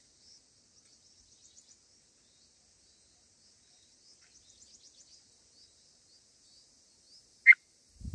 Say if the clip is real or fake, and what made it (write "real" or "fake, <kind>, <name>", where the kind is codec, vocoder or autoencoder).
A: real